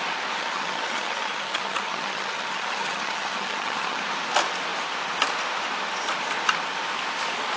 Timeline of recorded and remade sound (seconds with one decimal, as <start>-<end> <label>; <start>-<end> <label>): 0.0-0.4 recorded; 0.4-4.0 remade; 4.0-7.6 recorded